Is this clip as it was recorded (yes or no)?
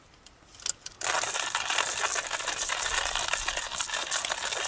yes